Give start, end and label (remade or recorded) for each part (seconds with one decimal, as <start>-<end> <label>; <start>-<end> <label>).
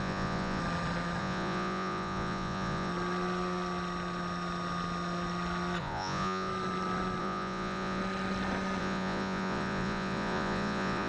0.0-0.6 remade; 0.6-1.2 recorded; 1.2-2.9 remade; 2.9-5.8 recorded; 5.8-6.5 remade; 6.5-7.2 recorded; 7.2-8.0 remade; 8.0-8.8 recorded; 8.8-11.1 remade